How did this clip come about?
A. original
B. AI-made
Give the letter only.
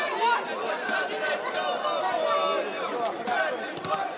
A